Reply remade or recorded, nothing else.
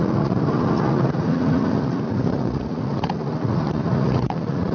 remade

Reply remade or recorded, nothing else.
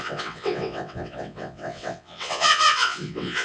remade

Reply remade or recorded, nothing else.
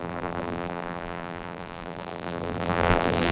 remade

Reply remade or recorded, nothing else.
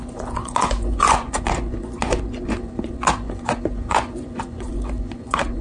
remade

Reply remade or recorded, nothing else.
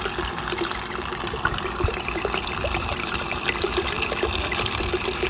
remade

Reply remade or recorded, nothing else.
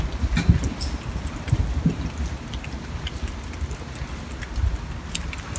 recorded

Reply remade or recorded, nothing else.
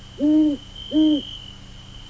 recorded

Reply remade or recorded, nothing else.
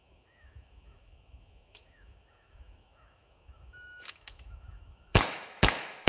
remade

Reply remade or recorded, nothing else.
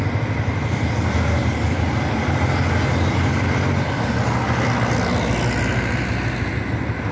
recorded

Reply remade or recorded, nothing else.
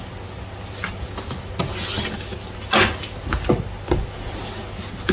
recorded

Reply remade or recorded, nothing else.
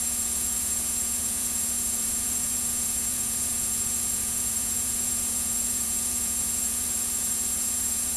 remade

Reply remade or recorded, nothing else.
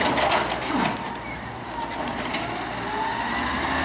recorded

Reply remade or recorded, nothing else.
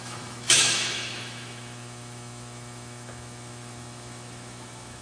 remade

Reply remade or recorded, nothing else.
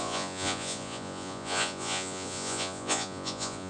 remade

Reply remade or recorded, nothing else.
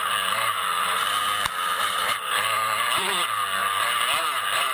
remade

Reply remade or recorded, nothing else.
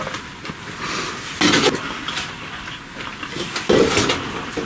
recorded